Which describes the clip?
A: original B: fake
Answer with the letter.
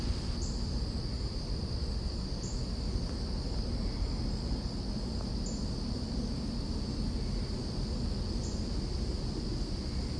A